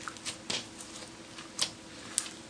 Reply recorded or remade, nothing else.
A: recorded